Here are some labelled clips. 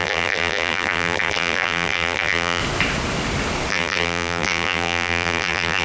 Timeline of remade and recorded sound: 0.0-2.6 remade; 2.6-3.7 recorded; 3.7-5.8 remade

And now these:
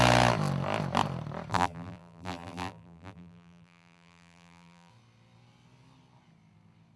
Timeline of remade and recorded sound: 0.0-1.5 recorded; 1.5-4.9 remade; 4.9-7.0 recorded

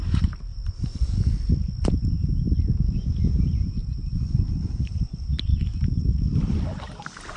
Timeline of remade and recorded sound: 0.0-0.5 recorded; 0.5-2.1 remade; 2.1-3.8 recorded; 3.8-4.5 remade; 4.5-5.3 recorded; 5.3-6.7 remade; 6.7-7.4 recorded

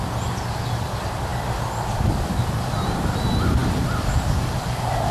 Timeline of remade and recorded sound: 0.0-5.1 remade

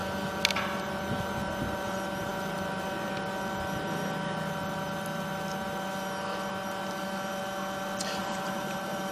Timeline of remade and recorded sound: 0.0-8.2 recorded; 8.2-9.1 remade